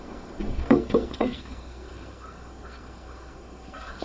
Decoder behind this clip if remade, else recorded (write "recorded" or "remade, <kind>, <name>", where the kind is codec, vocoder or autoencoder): remade, codec, SNAC